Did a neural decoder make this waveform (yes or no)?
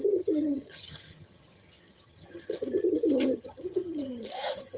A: yes